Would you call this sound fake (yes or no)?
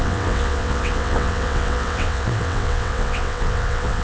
yes